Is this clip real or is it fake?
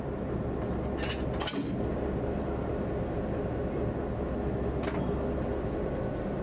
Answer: real